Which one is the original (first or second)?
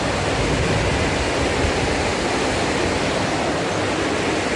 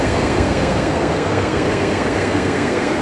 first